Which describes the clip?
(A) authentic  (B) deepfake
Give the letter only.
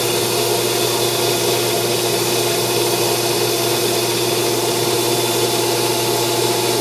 A